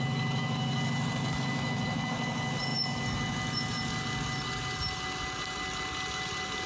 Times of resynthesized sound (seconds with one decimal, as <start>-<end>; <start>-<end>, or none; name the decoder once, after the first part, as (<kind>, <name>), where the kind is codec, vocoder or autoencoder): none